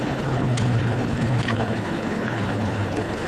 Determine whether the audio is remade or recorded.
remade